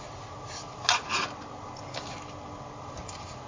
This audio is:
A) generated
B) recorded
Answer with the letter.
B